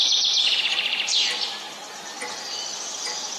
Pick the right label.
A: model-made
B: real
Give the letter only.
A